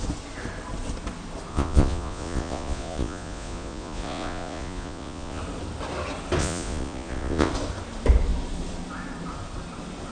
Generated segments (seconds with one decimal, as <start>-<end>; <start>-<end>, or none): 1.5-5.4; 6.4-7.5